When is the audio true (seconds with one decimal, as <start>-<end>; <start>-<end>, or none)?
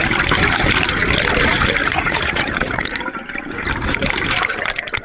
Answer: 0.0-1.8; 3.0-5.0